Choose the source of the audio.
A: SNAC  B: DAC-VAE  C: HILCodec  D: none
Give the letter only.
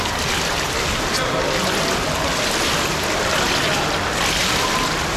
D